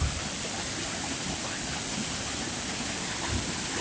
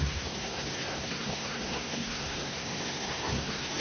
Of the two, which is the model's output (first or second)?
second